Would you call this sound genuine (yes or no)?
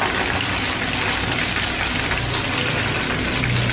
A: yes